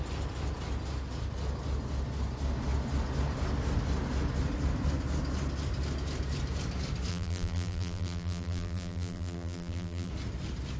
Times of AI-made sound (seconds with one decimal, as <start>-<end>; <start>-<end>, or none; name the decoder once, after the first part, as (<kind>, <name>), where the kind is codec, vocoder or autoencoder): 7.1-10.1 (vocoder, BigVGAN v2)